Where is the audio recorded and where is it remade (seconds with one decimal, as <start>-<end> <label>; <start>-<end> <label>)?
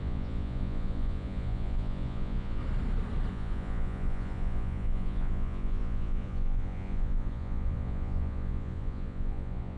0.0-2.6 remade; 2.6-3.3 recorded; 3.3-9.8 remade